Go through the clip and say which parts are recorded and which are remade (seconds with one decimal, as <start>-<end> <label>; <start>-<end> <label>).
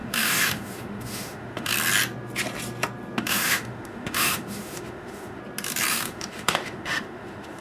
0.0-1.7 remade; 1.7-3.2 recorded; 3.2-5.4 remade; 5.4-5.9 recorded; 5.9-7.6 remade